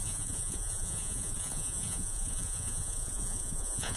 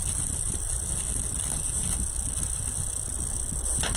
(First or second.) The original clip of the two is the second